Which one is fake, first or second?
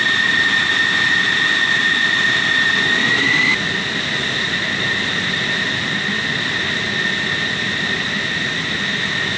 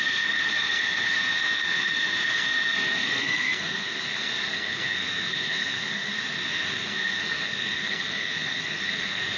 second